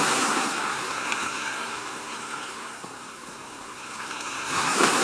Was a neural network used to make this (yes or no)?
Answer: yes